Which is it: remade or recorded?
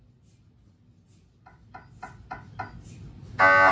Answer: recorded